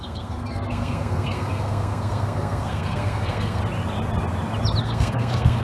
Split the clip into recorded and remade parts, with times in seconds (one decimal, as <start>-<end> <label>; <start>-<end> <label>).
0.0-3.6 remade; 3.6-4.8 recorded; 4.8-5.6 remade